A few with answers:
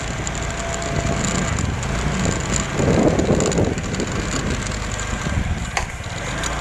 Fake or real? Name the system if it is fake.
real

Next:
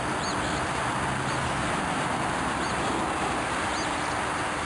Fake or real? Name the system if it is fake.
real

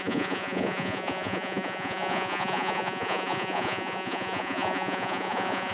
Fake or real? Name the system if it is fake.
fake, vocoder, Vocos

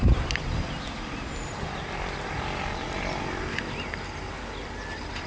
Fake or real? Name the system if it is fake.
real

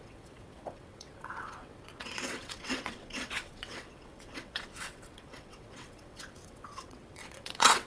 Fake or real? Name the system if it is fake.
fake, vocoder, WaveNeXt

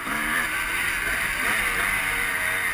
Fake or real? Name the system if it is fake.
real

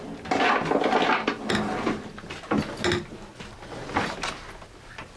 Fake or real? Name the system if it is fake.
real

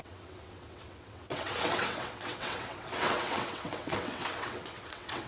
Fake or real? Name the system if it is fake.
fake, vocoder, WaveNeXt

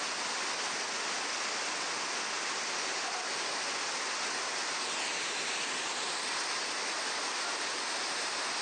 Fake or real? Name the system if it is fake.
real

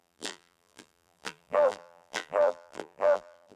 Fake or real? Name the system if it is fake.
fake, vocoder, BigVGAN v2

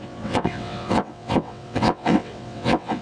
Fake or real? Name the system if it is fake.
fake, vocoder, WaveNeXt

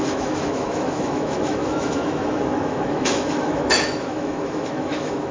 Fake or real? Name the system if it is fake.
fake, autoencoder, DAC-VAE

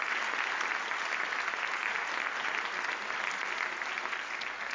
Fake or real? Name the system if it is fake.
real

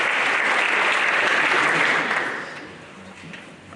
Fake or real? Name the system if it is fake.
real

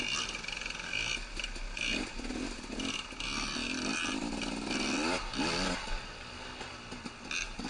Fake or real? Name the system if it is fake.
real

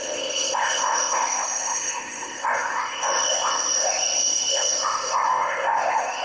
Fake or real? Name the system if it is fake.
fake, codec, ZipCodec